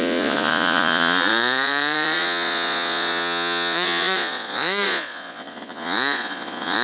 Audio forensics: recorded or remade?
remade